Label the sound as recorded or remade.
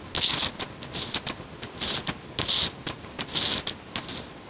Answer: recorded